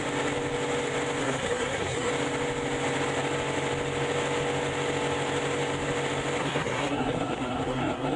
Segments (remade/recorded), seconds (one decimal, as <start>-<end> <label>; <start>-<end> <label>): 0.0-1.2 recorded; 1.2-2.1 remade; 2.1-6.4 recorded; 6.4-8.2 remade